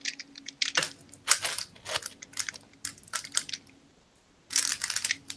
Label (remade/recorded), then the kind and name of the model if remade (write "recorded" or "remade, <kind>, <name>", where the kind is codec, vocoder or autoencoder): recorded